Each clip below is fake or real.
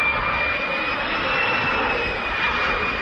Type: real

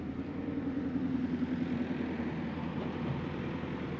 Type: fake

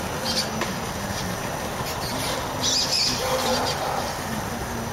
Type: real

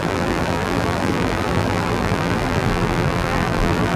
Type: fake